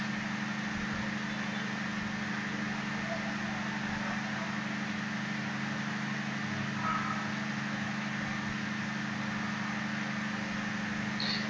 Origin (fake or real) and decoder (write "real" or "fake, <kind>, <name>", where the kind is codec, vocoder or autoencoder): real